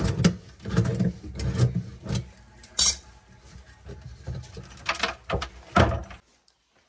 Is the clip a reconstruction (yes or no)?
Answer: no